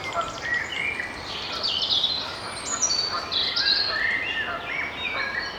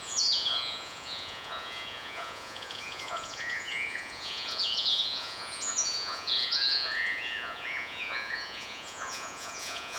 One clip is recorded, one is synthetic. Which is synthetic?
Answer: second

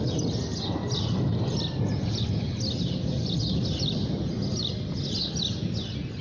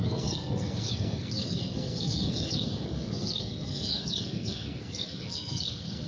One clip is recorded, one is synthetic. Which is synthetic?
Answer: second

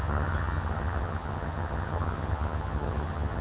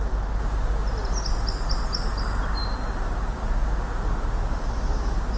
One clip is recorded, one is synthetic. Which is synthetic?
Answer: first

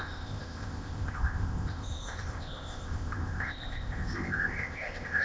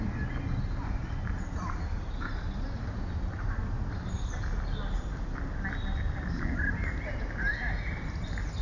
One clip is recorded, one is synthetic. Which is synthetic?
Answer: first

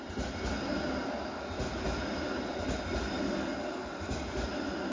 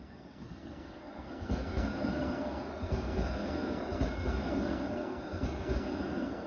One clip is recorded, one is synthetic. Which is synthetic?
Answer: second